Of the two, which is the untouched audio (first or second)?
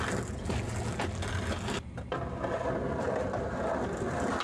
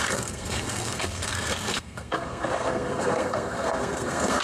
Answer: first